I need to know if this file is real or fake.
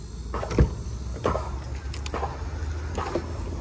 real